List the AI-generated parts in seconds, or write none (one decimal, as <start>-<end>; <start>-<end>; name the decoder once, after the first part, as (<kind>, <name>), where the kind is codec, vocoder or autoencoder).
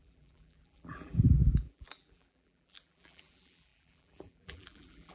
0.0-5.1 (vocoder, BigVGAN v2)